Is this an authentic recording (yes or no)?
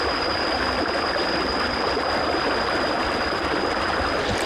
yes